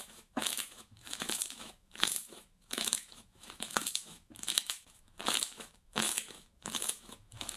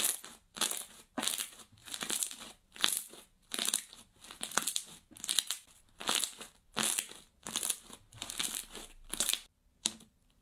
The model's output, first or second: first